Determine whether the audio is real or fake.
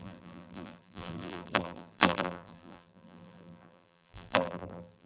fake